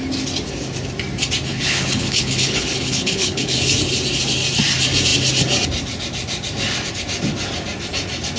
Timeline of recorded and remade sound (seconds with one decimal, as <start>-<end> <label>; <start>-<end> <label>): 0.0-1.5 recorded; 1.5-3.6 remade; 3.6-8.4 recorded